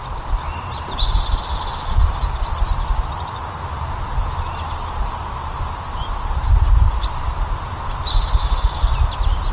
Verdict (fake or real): real